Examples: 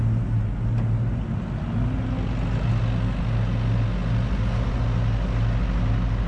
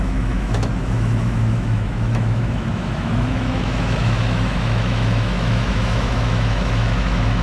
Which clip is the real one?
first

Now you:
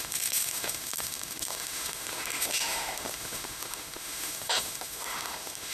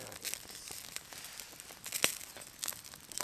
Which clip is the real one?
second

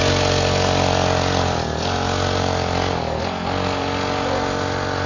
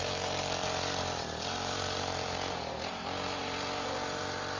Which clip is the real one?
first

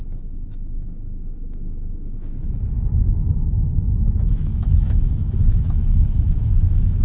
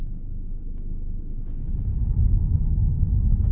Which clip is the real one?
second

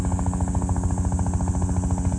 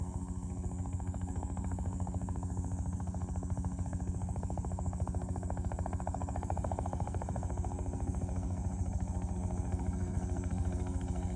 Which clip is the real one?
first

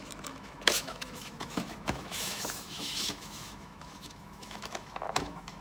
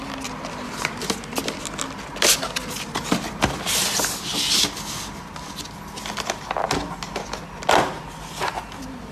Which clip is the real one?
second